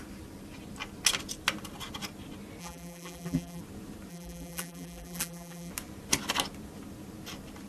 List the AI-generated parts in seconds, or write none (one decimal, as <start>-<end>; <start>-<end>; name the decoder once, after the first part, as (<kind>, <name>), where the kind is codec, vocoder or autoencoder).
2.6-3.6 (vocoder, BigVGAN v2); 4.1-5.7